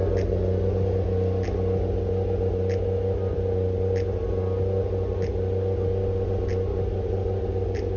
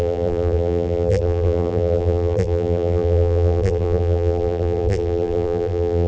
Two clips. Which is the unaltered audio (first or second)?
first